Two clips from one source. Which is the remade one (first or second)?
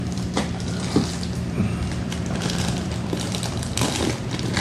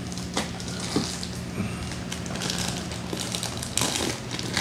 first